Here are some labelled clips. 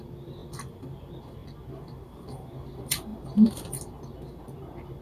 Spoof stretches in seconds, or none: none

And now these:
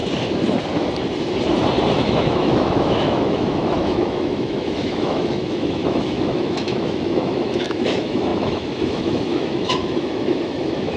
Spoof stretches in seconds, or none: 1.9-11.0 (autoencoder, DAC-VAE)

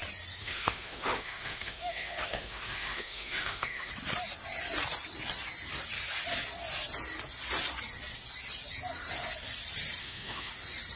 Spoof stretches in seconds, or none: 0.4-3.9 (autoencoder, DAC-VAE); 10.0-10.5

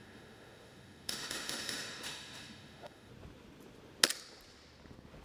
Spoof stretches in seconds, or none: 0.0-3.1 (autoencoder, DAC-VAE)

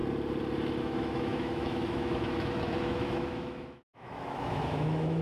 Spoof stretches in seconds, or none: 0.8-5.2 (autoencoder, DAC-VAE)

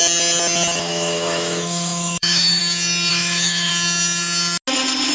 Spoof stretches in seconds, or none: 0.8-2.6 (autoencoder, DAC-VAE); 3.1-3.7

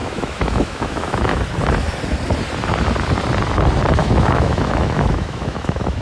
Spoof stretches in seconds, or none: 0.0-1.4 (autoencoder, DAC-VAE); 4.0-6.0